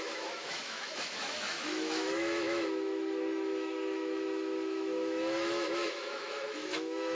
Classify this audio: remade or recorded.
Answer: remade